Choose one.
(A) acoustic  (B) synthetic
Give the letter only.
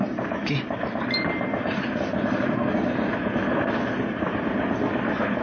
A